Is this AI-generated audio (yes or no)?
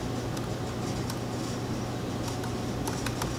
no